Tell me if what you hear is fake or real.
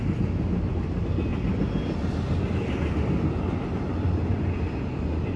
real